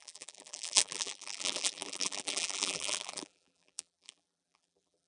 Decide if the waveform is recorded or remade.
remade